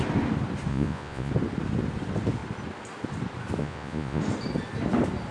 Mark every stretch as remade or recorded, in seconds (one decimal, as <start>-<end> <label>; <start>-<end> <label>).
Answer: 0.0-0.7 recorded; 0.7-1.3 remade; 1.3-3.6 recorded; 3.6-4.2 remade; 4.2-5.3 recorded